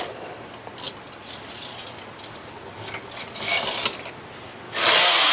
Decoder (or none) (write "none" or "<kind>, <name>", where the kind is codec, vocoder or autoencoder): none